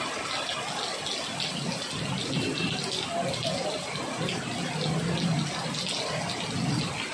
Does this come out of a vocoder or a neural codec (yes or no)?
no